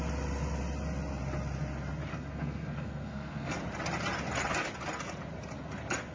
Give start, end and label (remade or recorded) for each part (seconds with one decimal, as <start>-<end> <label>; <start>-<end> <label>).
0.0-2.1 recorded; 2.1-3.6 remade; 3.6-6.1 recorded